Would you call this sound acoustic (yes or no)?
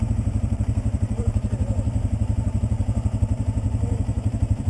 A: no